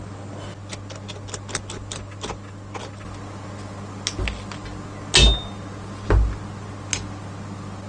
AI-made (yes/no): no